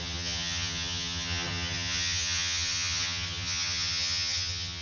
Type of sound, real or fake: fake